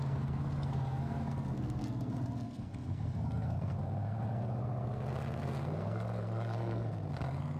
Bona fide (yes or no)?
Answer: no